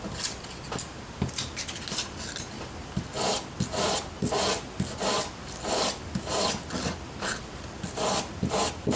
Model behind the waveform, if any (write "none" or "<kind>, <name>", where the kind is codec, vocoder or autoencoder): none